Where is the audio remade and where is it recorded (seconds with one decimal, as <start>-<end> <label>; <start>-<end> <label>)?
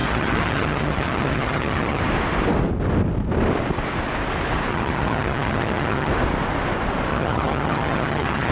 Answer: 0.0-2.0 remade; 2.0-4.7 recorded; 4.7-6.1 remade; 6.1-7.1 recorded; 7.1-8.5 remade